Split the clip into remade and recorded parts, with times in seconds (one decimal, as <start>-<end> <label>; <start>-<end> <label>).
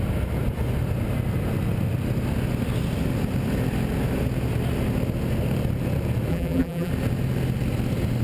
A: 0.0-6.3 recorded; 6.3-6.9 remade; 6.9-8.2 recorded